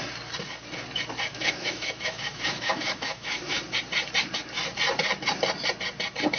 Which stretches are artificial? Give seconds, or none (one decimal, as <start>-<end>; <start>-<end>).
1.3-3.6